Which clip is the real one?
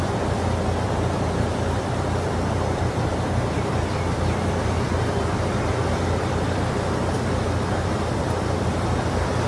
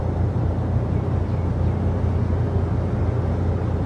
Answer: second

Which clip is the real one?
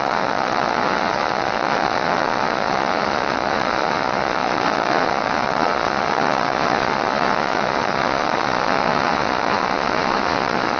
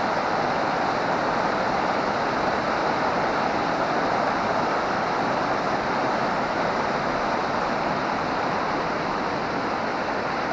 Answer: second